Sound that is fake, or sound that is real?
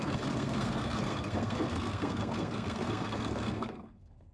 fake